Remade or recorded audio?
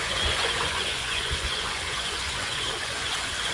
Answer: remade